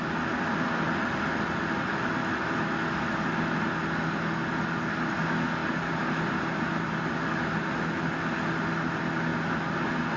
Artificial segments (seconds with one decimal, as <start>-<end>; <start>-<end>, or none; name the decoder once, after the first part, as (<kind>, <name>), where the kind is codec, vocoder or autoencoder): 5.6-7.1 (vocoder, BigVGAN v2)